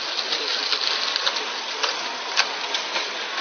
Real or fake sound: real